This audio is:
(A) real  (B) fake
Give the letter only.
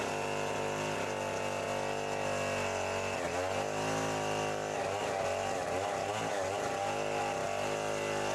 A